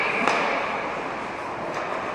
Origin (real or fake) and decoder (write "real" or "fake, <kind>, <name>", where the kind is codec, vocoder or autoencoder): real